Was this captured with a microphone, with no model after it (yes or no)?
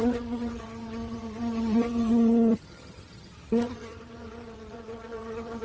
no